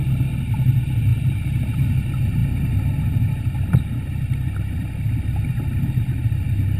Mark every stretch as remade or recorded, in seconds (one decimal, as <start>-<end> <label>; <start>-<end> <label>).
0.0-1.1 recorded; 1.1-2.0 remade; 2.0-2.4 recorded; 2.4-6.8 remade

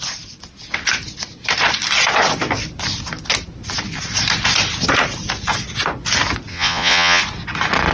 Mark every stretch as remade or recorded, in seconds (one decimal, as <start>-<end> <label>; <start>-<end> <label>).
0.0-6.5 recorded; 6.5-7.2 remade; 7.2-7.9 recorded

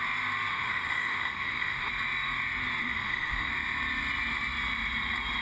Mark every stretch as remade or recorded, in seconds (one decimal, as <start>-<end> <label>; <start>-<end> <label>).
0.0-0.5 recorded; 0.5-1.9 remade; 1.9-2.8 recorded; 2.8-3.5 remade; 3.5-5.4 recorded

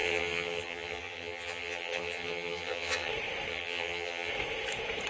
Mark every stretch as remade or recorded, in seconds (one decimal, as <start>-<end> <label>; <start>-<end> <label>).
0.0-3.1 remade; 3.1-3.5 recorded; 3.5-4.3 remade; 4.3-5.1 recorded

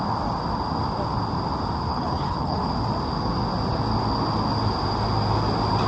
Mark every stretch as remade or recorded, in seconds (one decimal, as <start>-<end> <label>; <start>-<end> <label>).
0.0-1.9 recorded; 1.9-2.7 remade; 2.7-5.9 recorded

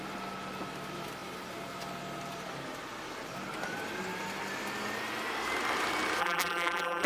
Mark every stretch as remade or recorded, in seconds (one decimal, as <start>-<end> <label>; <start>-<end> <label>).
0.0-6.2 recorded; 6.2-7.1 remade

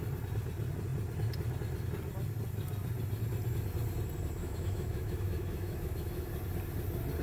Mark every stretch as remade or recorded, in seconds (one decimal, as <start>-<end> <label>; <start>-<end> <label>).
0.0-4.4 recorded; 4.4-6.3 remade; 6.3-7.2 recorded